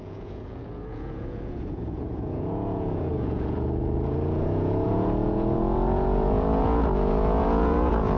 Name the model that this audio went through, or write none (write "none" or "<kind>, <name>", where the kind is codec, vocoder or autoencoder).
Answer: vocoder, Vocos